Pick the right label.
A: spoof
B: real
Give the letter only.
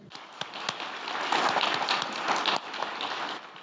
B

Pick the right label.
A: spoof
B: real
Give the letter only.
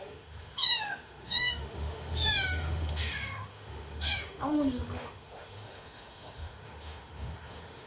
A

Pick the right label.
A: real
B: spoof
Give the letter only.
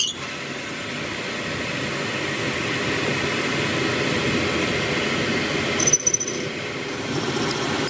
A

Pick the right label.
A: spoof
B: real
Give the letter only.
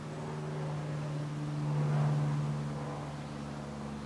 B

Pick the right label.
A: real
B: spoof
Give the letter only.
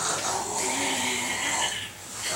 A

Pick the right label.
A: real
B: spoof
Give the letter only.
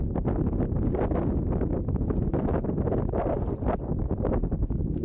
A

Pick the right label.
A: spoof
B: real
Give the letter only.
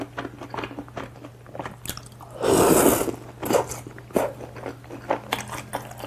B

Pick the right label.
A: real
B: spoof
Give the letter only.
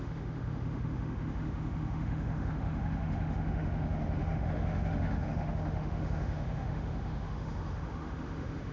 B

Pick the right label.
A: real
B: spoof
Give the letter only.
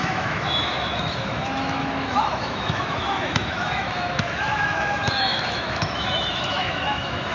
B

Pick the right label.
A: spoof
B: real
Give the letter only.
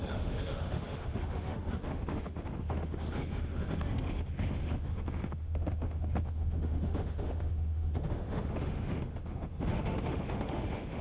A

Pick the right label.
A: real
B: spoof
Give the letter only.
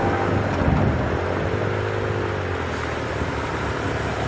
A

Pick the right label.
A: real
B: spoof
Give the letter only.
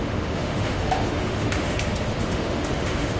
B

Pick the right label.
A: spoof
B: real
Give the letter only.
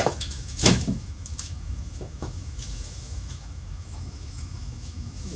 A